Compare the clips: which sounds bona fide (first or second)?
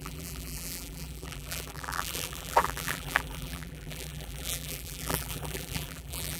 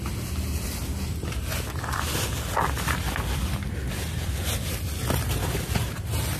second